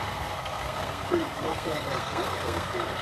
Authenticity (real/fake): fake